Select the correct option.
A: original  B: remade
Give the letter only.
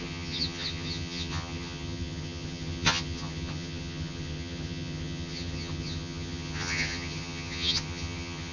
B